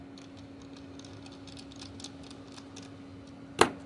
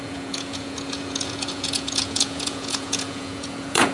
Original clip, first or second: first